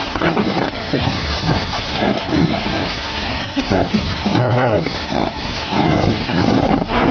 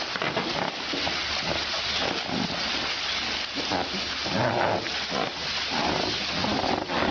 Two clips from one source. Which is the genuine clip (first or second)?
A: second